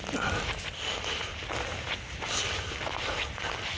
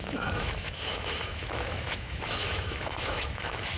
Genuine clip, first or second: first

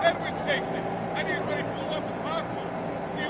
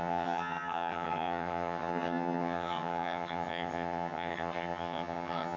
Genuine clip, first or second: first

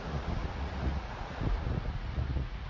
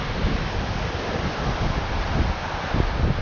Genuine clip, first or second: second